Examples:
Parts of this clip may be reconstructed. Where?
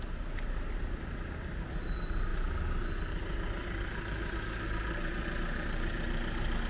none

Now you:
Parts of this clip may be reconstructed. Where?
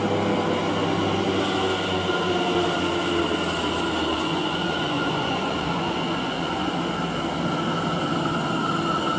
4.1-6.8 (vocoder, Vocos)